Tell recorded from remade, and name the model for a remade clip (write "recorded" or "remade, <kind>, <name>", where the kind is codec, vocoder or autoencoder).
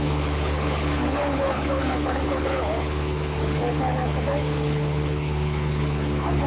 remade, codec, HILCodec